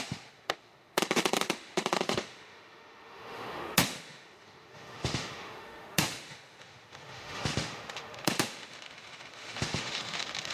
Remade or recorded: remade